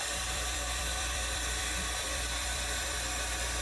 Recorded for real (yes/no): no